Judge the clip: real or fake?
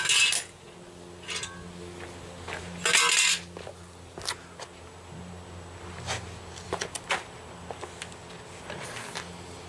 real